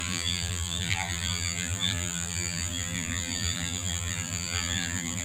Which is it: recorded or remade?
remade